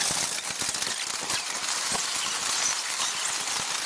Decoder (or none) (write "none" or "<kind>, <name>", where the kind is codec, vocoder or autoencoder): none